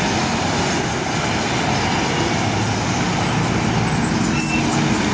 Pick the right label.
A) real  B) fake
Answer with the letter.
A